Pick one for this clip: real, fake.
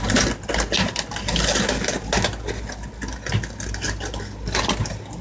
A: real